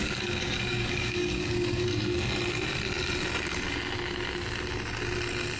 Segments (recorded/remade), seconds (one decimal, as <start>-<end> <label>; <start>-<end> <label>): 0.0-1.9 remade; 1.9-5.6 recorded